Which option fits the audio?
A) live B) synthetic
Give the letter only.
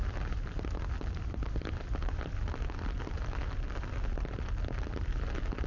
A